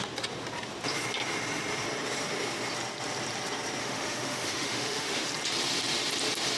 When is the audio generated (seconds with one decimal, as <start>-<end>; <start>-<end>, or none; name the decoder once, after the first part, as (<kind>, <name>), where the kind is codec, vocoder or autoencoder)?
3.8-5.3 (autoencoder, DAC-VAE)